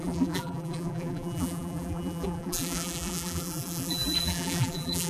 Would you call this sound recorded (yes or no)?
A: no